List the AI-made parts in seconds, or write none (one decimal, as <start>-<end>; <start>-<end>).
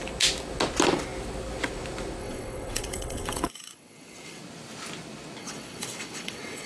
2.2-4.4; 5.4-6.7